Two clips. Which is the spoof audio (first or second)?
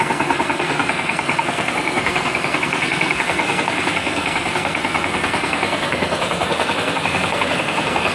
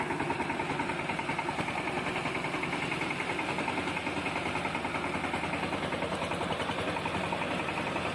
first